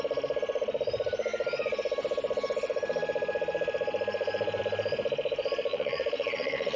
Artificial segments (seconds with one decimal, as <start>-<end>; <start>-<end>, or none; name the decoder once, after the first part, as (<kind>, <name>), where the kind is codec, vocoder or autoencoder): 5.7-6.8 (vocoder, Vocos)